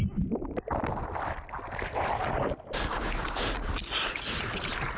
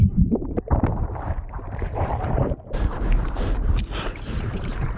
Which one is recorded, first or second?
first